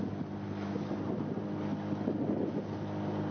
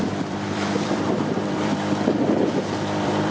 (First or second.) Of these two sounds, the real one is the first